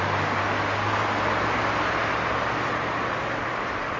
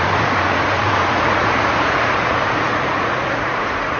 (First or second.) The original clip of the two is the first